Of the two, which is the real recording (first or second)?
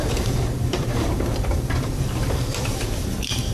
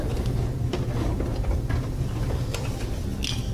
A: second